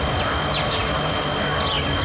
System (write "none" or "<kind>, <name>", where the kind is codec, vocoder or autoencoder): none